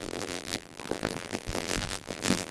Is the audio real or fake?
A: fake